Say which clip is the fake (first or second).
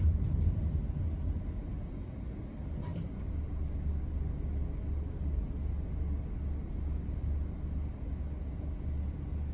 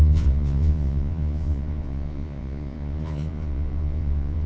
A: second